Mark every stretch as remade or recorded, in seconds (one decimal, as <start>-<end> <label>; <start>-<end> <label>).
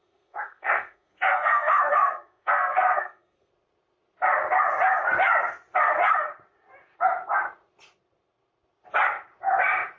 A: 0.0-3.5 remade; 3.5-10.0 recorded